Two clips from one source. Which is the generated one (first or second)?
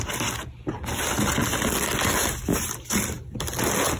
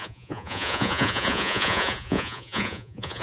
second